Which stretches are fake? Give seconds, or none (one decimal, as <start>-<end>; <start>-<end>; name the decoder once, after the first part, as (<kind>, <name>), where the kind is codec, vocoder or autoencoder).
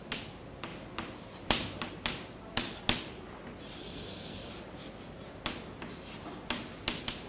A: 3.8-4.5 (codec, SNAC)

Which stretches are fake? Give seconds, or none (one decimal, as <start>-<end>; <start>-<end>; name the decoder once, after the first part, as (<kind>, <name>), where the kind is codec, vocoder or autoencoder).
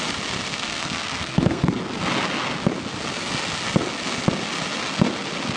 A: 0.5-1.8 (codec, SNAC)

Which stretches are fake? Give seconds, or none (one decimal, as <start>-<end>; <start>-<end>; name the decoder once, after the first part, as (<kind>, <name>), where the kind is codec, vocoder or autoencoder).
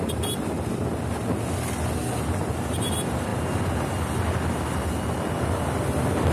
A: none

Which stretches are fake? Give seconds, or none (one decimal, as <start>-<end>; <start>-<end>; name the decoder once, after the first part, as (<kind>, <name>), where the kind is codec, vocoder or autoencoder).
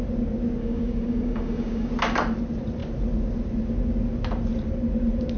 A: 0.6-1.9 (codec, DAC)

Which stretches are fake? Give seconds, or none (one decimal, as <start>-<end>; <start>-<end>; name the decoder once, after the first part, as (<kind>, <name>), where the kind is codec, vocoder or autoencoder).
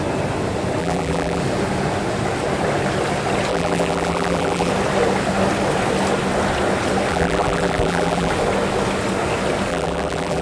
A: 0.8-1.4 (vocoder, BigVGAN v2); 3.5-4.7; 7.1-8.3; 9.7-10.4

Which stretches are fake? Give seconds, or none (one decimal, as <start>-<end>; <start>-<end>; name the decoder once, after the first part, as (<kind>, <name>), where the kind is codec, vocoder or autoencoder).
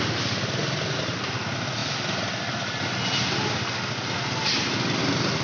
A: none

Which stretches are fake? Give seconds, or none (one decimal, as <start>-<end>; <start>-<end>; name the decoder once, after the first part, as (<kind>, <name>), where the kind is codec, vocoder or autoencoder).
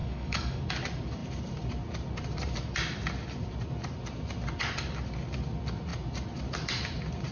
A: 0.0-0.6 (codec, DAC)